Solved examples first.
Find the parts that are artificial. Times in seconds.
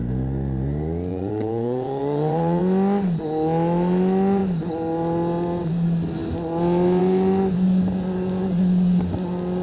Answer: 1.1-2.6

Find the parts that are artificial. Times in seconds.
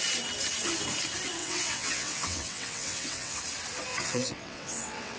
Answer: 1.4-3.4; 3.9-5.2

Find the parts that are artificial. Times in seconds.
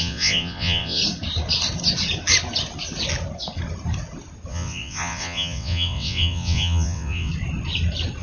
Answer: 0.0-1.0; 4.5-7.3